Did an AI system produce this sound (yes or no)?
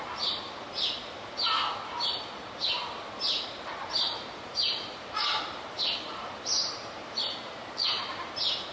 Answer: yes